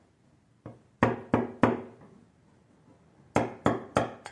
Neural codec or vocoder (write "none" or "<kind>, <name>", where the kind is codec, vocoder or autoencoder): none